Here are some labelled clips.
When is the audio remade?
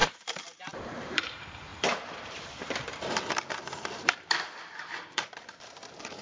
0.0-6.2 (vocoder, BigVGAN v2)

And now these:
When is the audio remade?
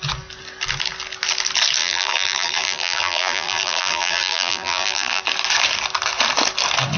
1.8-5.2 (vocoder, BigVGAN v2)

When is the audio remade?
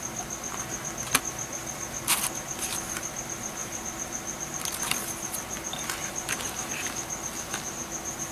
3.6-4.6 (vocoder, BigVGAN v2); 6.0-6.7